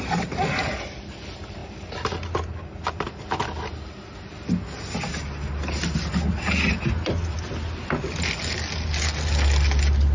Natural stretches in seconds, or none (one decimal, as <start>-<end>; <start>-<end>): 0.0-10.1